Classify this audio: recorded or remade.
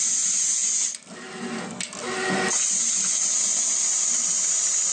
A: recorded